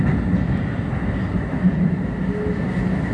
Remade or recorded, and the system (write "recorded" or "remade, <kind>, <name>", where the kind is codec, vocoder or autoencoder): recorded